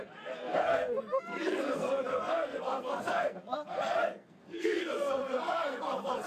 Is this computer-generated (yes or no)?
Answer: yes